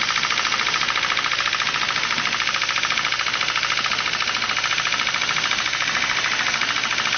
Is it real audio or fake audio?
real